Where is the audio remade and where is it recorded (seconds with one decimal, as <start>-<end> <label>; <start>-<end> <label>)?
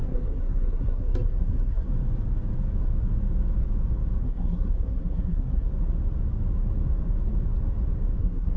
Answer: 0.0-1.9 remade; 1.9-4.2 recorded; 4.2-5.7 remade; 5.7-8.2 recorded; 8.2-8.6 remade